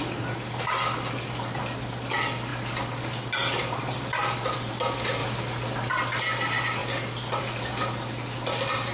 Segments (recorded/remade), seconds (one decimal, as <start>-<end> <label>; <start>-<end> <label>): 0.0-2.5 recorded; 2.5-4.7 remade; 4.7-6.8 recorded; 6.8-7.4 remade; 7.4-8.9 recorded